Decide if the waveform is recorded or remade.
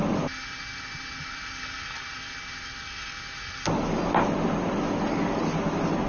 recorded